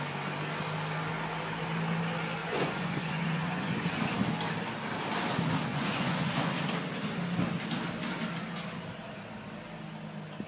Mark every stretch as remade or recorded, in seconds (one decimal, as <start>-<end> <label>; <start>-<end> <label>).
0.0-2.4 recorded; 2.4-3.9 remade; 3.9-5.7 recorded; 5.7-6.6 remade; 6.6-10.5 recorded